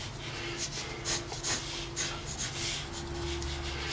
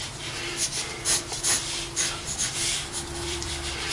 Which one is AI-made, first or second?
second